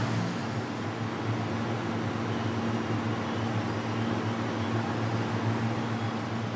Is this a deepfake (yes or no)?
no